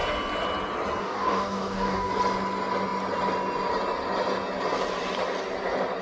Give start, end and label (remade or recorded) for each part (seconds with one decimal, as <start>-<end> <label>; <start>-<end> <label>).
0.0-1.0 recorded; 1.0-2.1 remade; 2.1-6.0 recorded